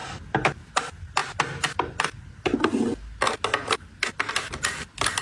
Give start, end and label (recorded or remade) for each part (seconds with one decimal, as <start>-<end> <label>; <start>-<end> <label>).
0.0-5.2 recorded